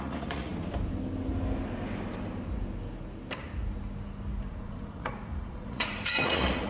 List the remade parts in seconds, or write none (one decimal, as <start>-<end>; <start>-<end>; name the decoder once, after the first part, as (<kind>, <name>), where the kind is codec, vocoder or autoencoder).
0.0-0.5 (vocoder, Vocos); 4.5-6.7